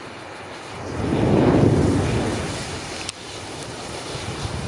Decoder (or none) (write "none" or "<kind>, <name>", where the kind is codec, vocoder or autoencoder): none